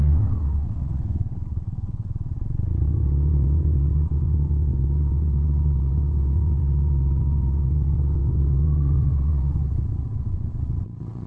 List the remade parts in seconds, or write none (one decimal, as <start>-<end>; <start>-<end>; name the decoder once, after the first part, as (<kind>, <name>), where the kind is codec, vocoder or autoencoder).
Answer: 0.0-11.3 (vocoder, WaveNeXt)